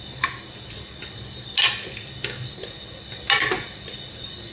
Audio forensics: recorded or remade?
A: recorded